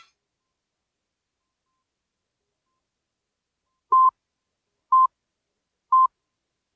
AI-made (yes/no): no